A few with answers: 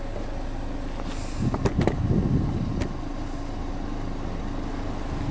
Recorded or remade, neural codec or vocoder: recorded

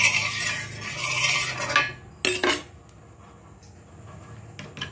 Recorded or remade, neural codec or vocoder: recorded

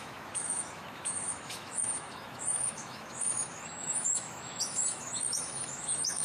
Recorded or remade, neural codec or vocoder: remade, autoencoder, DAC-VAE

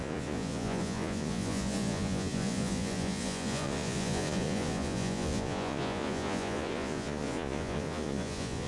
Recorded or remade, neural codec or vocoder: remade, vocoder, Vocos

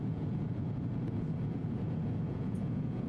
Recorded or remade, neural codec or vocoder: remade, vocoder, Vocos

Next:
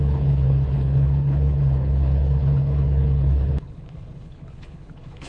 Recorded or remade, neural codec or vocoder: remade, codec, HILCodec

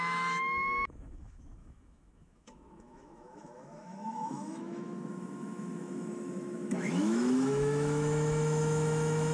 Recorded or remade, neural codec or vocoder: remade, autoencoder, DAC-VAE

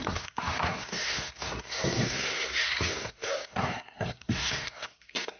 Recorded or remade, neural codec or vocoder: remade, codec, SNAC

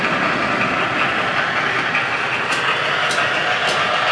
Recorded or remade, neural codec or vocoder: recorded